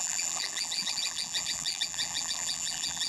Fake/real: fake